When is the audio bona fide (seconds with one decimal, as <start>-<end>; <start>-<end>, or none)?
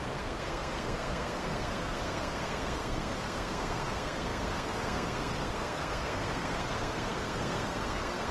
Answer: none